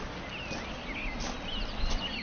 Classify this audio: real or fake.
real